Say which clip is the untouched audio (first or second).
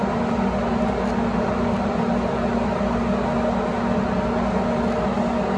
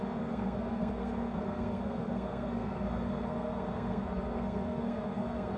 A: first